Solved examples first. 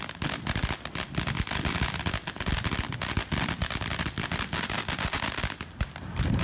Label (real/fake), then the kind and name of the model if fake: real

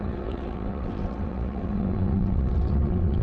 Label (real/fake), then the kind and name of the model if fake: fake, vocoder, WaveNeXt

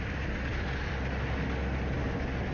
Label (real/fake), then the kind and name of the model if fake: real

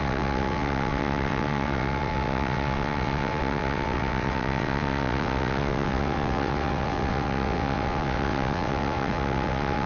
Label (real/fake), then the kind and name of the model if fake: fake, vocoder, WaveNeXt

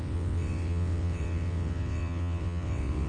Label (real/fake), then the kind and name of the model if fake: fake, vocoder, WaveNeXt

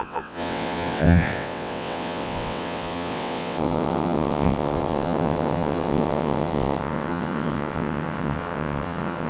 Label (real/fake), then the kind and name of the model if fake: fake, vocoder, WaveNeXt